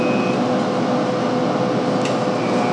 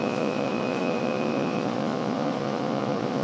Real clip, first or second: first